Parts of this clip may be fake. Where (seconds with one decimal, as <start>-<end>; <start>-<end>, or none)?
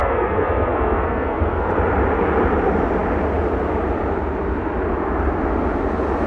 0.0-1.7